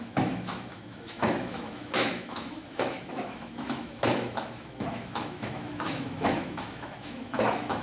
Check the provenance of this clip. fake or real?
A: fake